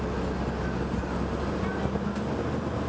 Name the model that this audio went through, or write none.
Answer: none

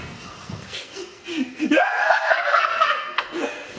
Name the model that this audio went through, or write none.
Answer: codec, SNAC